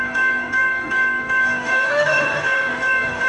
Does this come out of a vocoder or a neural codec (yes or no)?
yes